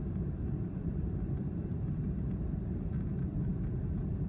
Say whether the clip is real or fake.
fake